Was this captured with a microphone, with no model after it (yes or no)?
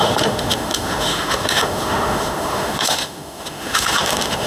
no